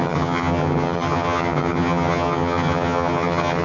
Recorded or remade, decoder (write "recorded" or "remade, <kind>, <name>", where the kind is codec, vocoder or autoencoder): remade, vocoder, HiFi-GAN